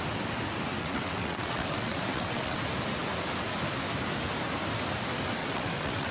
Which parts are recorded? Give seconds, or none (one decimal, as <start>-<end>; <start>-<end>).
0.0-0.8; 2.6-5.4